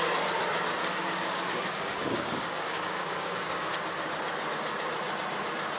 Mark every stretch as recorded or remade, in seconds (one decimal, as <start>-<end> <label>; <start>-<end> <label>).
0.0-0.8 recorded; 0.8-3.7 remade; 3.7-5.8 recorded